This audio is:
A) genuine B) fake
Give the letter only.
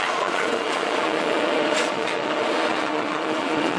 B